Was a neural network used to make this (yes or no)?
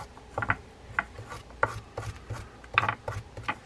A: no